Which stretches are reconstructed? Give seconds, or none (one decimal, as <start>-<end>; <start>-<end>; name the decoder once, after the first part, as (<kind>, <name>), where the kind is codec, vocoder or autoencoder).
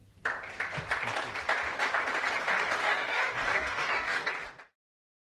2.8-4.3 (codec, DAC)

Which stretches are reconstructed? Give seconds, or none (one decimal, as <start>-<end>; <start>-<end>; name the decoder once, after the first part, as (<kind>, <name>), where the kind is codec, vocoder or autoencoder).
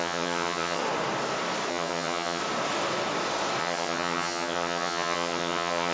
0.0-0.8 (vocoder, HiFi-GAN); 1.7-2.4; 3.6-5.9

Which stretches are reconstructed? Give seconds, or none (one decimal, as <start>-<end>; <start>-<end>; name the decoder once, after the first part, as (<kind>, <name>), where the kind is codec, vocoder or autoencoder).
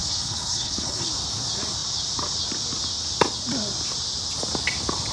0.0-1.1 (codec, HILCodec)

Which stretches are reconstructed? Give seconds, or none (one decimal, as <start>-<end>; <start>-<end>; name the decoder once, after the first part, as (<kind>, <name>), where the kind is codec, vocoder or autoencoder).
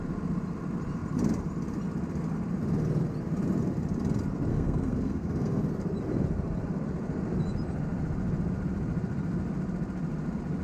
4.5-5.6 (codec, SNAC)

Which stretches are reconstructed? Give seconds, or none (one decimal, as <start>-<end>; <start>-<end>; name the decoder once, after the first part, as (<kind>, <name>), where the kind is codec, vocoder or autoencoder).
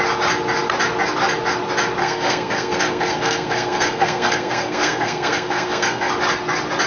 2.0-6.1 (codec, SNAC)